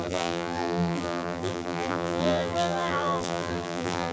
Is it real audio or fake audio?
fake